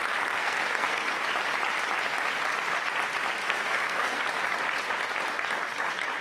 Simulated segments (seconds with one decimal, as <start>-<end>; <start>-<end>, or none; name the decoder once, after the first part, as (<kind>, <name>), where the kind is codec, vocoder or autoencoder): 0.4-1.2 (codec, SNAC); 3.4-4.2